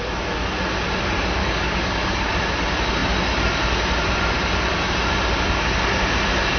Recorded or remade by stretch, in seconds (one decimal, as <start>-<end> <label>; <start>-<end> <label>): 0.0-1.4 recorded; 1.4-2.3 remade; 2.3-6.6 recorded